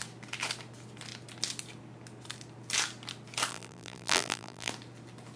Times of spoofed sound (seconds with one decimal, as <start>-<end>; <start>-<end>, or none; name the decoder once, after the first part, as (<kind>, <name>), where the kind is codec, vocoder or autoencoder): 3.5-4.7 (vocoder, BigVGAN v2)